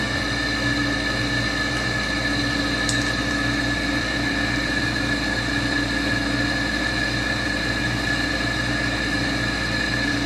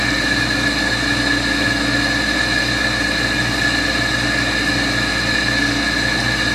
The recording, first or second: second